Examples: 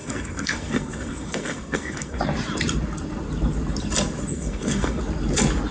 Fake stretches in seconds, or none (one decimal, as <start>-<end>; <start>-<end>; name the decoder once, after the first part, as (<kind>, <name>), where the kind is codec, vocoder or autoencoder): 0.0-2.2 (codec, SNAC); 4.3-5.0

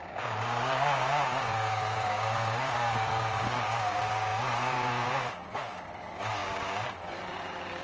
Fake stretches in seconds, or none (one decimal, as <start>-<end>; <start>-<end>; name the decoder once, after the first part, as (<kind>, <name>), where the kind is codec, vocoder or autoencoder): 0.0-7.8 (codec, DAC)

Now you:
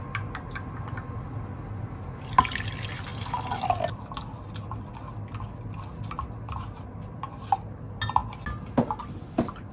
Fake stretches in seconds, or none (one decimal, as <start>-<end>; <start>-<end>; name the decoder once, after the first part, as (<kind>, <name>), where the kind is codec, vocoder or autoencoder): none